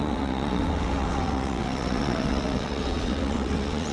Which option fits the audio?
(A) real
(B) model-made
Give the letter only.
B